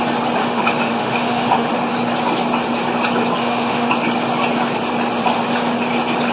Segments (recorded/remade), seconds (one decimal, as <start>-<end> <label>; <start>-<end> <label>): 0.0-0.4 recorded; 0.4-1.7 remade; 1.7-3.4 recorded; 3.4-3.9 remade; 3.9-6.3 recorded